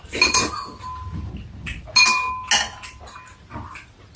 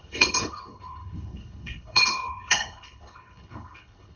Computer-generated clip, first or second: second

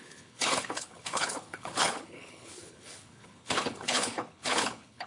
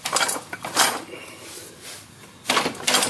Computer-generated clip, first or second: first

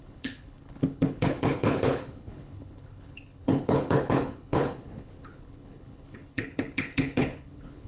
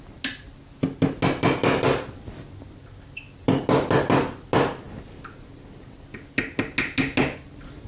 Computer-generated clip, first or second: first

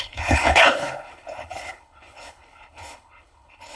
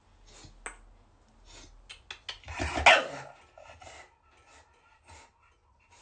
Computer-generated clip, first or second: first